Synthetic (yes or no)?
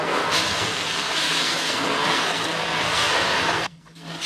yes